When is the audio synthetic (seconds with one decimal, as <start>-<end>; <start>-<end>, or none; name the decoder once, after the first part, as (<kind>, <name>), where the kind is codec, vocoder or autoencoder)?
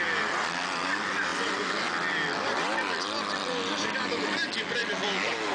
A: none